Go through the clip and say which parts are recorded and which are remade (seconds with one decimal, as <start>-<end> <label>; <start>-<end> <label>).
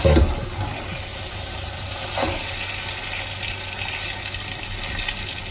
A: 0.0-1.1 recorded; 1.1-1.9 remade; 1.9-5.5 recorded